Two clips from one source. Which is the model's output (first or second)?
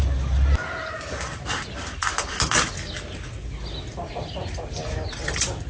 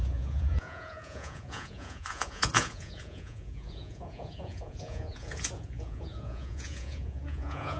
second